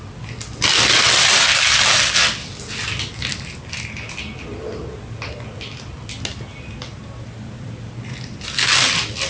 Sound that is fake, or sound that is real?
real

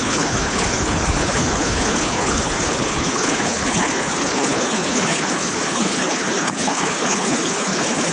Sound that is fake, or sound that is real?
fake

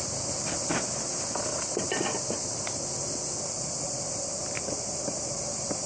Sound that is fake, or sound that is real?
real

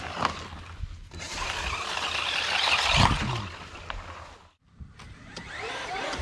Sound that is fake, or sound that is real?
real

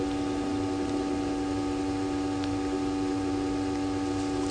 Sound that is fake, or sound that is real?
real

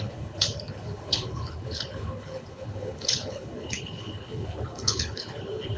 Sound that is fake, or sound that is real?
fake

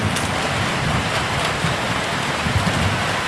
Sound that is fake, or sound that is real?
real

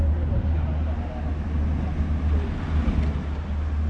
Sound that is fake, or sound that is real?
real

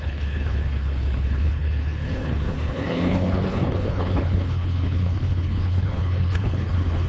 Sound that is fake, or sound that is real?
fake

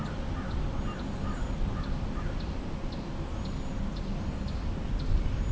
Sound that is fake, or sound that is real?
real